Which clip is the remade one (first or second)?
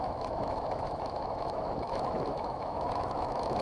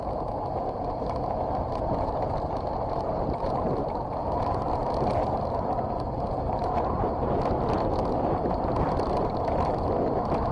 first